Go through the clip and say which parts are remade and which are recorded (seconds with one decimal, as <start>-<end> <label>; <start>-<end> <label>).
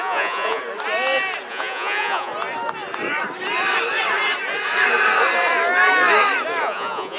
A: 0.0-0.6 remade; 0.6-1.5 recorded; 1.5-2.3 remade; 2.3-6.6 recorded; 6.6-7.2 remade